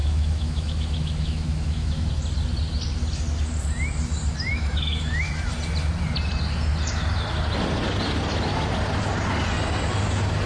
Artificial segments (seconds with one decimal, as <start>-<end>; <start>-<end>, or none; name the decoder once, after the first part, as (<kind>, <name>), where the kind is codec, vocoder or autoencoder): 0.0-2.1 (autoencoder, DAC-VAE); 4.5-5.3